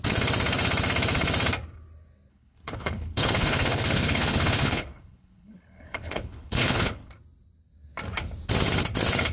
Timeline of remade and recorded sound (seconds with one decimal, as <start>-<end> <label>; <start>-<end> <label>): 0.0-2.3 recorded; 2.3-7.1 remade; 7.1-9.3 recorded